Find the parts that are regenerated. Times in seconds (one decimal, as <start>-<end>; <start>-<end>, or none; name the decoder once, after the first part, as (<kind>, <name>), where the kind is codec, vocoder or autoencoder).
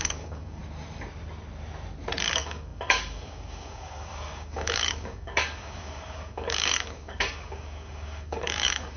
0.0-0.6 (codec, DAC); 2.2-9.0